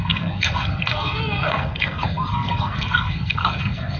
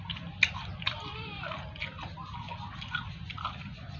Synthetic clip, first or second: first